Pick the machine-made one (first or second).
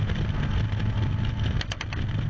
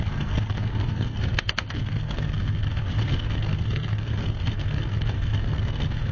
second